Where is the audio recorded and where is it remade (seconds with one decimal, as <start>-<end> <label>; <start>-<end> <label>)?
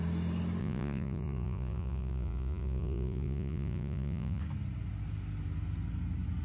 0.0-0.6 recorded; 0.6-4.4 remade; 4.4-6.4 recorded